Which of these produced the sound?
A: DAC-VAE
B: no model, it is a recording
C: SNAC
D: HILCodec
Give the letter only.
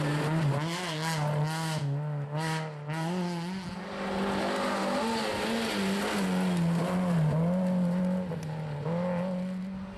B